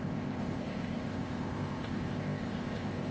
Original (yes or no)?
no